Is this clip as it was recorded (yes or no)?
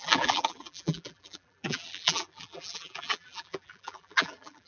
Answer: no